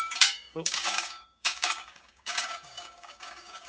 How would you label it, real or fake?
fake